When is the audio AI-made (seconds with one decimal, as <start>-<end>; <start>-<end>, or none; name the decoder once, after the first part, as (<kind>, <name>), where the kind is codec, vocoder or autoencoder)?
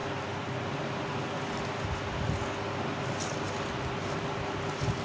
none